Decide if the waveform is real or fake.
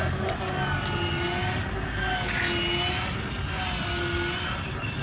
real